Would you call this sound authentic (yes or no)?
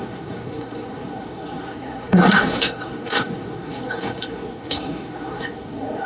no